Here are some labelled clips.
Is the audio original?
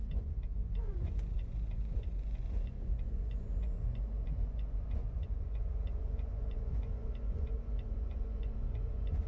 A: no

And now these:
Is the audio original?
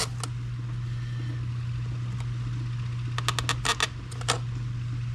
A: yes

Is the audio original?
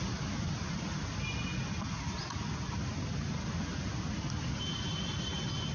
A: yes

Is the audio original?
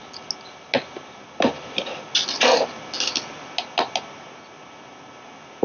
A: yes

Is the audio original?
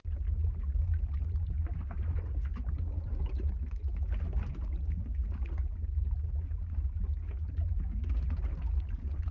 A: yes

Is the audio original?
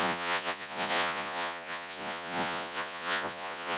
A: no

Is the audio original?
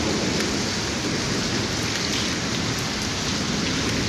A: yes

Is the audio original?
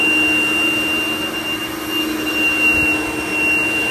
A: yes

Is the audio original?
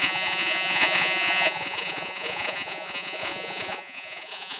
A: no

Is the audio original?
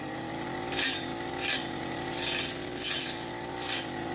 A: yes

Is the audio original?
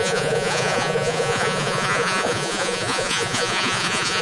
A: no